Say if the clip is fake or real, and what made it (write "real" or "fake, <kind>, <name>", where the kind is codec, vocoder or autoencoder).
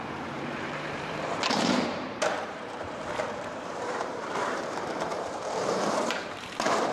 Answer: fake, vocoder, BigVGAN v2